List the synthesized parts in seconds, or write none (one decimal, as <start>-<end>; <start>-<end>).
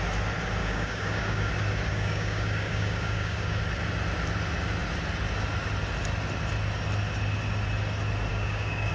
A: 0.6-1.5; 1.9-3.6; 8.3-8.9